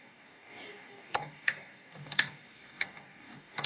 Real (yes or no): no